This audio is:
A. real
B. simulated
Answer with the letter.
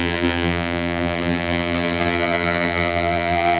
B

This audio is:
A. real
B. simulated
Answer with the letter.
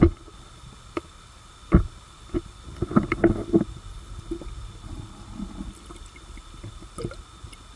A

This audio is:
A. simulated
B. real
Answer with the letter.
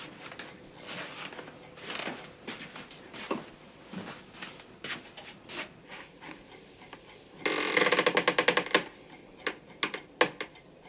B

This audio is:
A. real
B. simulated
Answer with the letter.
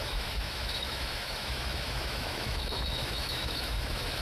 B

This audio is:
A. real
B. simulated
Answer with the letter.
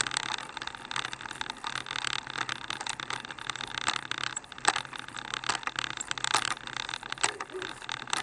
A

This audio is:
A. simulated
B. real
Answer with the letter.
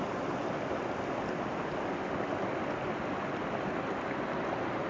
B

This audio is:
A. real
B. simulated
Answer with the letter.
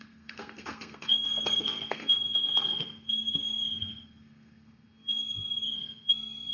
B